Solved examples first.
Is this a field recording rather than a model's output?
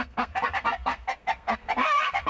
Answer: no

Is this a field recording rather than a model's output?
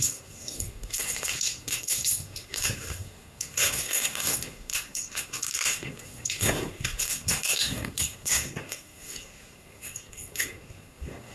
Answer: no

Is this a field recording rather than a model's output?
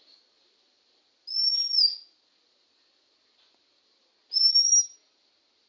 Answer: yes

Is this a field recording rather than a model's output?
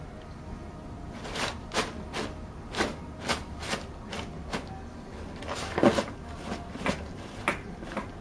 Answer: yes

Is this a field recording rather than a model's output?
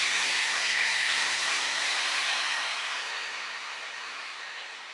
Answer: no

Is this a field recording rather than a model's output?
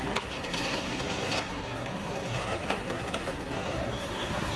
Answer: no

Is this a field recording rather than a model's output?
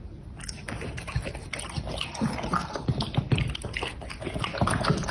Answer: yes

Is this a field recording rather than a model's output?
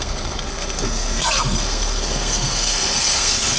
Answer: no